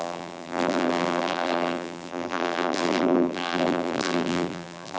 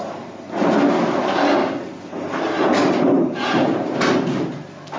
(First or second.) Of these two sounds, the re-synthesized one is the first